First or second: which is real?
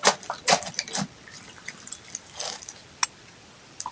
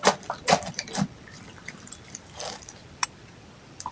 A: first